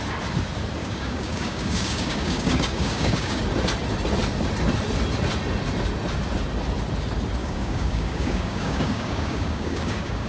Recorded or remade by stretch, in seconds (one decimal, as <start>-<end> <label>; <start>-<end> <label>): 0.0-0.8 recorded; 0.8-3.4 remade; 3.4-7.4 recorded; 7.4-10.3 remade